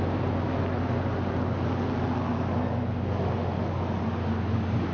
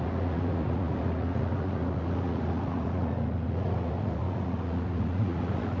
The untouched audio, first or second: first